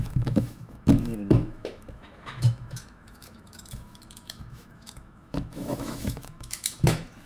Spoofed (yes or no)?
yes